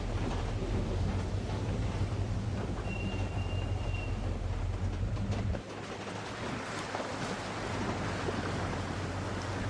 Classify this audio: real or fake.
real